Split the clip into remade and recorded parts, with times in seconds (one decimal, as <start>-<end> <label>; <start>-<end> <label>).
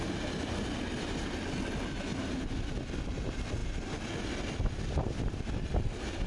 0.0-6.3 recorded